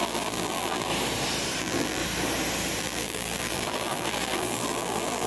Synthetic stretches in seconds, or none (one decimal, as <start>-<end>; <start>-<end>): 0.0-0.9; 1.6-2.0; 2.8-5.3